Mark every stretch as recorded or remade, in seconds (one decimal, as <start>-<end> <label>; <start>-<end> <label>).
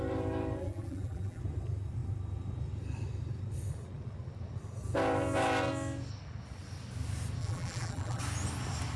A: 0.0-0.6 recorded; 0.6-1.4 remade; 1.4-7.4 recorded; 7.4-8.2 remade; 8.2-9.0 recorded